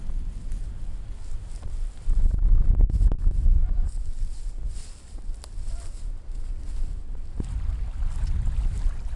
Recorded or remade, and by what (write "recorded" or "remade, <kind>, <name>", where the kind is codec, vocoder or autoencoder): recorded